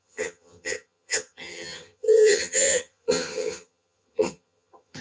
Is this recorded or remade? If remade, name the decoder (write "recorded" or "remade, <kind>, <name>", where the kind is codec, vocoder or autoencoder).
remade, vocoder, HiFi-GAN